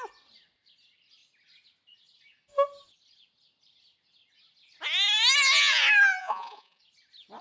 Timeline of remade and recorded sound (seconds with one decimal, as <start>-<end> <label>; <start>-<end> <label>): 0.0-6.2 recorded; 6.2-6.8 remade; 6.8-7.4 recorded